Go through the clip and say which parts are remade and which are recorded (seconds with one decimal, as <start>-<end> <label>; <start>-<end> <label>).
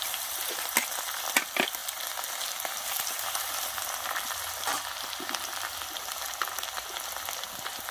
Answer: 0.0-7.9 recorded